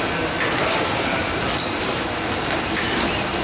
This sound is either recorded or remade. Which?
recorded